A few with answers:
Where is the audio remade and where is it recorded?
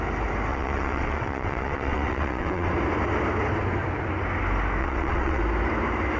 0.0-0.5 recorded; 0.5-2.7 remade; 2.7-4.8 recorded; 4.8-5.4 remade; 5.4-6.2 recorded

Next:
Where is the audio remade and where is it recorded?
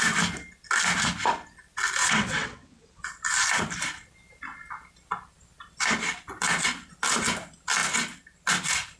0.0-2.0 recorded; 2.0-3.1 remade; 3.1-9.0 recorded